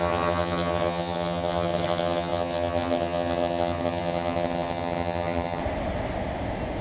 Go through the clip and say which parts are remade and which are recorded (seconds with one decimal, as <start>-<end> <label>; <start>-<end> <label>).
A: 0.0-5.6 remade; 5.6-6.8 recorded